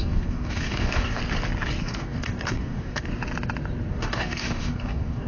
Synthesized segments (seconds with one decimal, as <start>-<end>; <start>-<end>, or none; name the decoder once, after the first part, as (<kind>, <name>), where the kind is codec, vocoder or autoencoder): 0.0-1.2 (codec, DAC); 1.8-3.1; 3.9-5.3